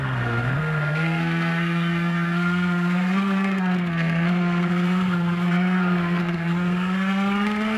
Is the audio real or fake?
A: fake